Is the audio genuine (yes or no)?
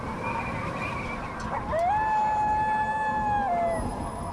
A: yes